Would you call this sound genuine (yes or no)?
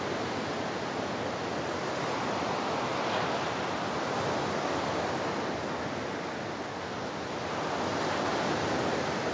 yes